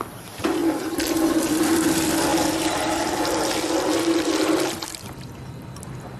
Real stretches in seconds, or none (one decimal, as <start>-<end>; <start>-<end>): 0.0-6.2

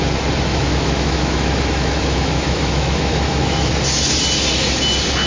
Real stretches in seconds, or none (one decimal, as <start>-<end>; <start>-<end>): 0.0-0.5; 3.7-5.3

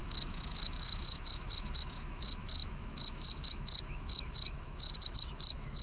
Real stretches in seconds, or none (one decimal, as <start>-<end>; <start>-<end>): none

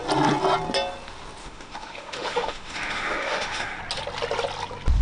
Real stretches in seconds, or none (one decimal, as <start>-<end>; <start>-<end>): 0.0-1.4; 3.8-5.0

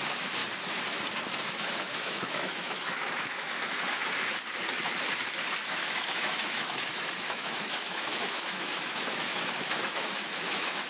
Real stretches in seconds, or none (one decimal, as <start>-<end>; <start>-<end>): 0.4-1.5; 4.0-5.7

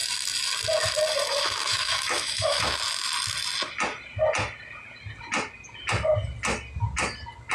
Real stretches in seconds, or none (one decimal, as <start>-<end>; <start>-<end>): 0.0-1.6; 2.8-7.5

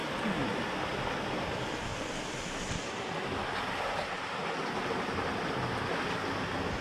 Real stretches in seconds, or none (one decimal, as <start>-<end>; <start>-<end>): 0.0-6.8

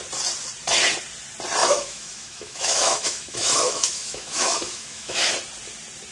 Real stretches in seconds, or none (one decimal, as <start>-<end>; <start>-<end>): 0.0-1.6; 5.3-6.1